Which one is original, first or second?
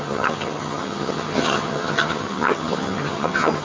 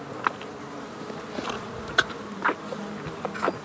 second